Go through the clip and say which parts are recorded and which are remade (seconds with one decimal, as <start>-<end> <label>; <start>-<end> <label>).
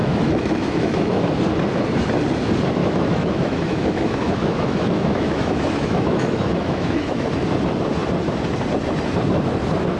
0.0-1.2 remade; 1.2-2.8 recorded; 2.8-7.3 remade; 7.3-10.0 recorded